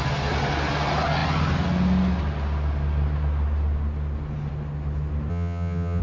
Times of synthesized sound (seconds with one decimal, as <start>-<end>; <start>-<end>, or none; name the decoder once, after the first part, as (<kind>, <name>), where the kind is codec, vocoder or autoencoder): 5.3-6.0 (vocoder, HiFi-GAN)